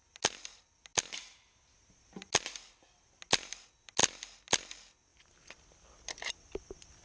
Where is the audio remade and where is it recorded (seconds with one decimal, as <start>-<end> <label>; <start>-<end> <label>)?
0.0-7.0 recorded